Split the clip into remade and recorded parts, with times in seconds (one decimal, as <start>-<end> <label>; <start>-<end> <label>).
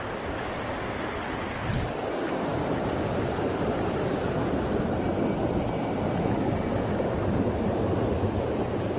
0.0-9.0 recorded